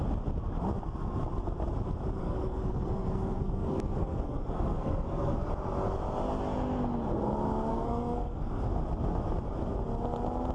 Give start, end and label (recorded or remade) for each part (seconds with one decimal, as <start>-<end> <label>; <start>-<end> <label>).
0.0-2.2 recorded; 2.2-5.5 remade; 5.5-7.7 recorded; 7.7-8.6 remade; 8.6-10.5 recorded